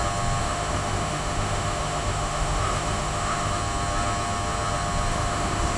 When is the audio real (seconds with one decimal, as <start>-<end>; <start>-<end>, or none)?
0.0-0.4; 3.6-5.1